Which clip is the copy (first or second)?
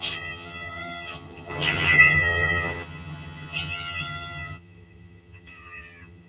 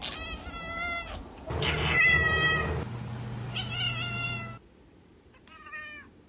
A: first